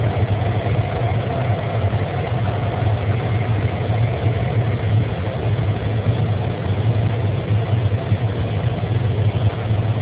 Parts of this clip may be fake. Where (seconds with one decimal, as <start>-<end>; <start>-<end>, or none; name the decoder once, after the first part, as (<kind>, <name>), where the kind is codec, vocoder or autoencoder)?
none